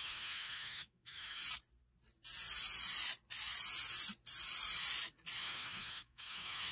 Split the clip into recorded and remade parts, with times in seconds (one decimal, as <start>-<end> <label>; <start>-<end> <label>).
0.0-1.4 remade; 1.4-5.4 recorded; 5.4-6.7 remade